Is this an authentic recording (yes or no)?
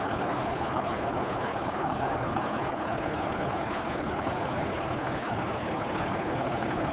no